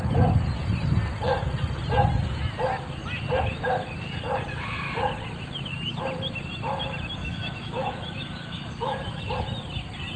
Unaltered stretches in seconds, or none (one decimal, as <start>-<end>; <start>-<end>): 0.0-7.2; 9.2-10.2